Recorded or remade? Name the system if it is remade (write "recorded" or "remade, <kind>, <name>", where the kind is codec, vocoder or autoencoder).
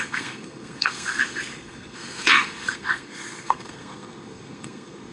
remade, codec, SNAC